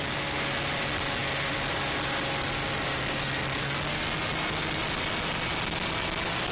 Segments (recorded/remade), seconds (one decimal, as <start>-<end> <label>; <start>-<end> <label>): 0.0-6.5 recorded